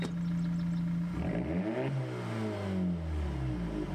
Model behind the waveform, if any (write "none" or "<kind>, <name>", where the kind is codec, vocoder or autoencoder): none